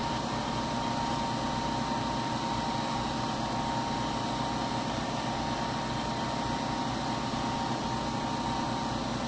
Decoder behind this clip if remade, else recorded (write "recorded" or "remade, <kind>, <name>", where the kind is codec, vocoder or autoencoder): recorded